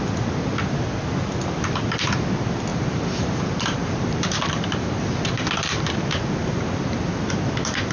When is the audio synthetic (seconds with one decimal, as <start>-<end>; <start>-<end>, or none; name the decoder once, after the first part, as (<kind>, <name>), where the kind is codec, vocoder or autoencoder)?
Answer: 2.7-6.0 (vocoder, BigVGAN v2); 6.4-7.2